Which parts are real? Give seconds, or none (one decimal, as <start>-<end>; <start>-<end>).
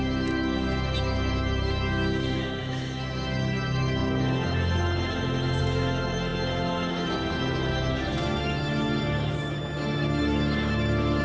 none